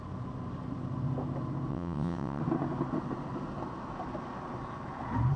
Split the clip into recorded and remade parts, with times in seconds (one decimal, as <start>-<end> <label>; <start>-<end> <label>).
0.0-1.7 recorded; 1.7-2.4 remade; 2.4-5.4 recorded